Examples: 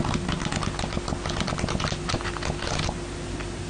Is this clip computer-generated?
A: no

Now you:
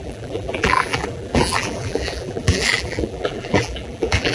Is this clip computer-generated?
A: yes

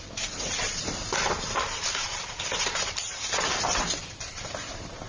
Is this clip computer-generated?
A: yes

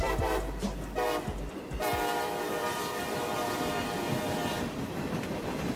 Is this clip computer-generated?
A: yes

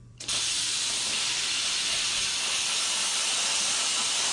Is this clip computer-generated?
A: yes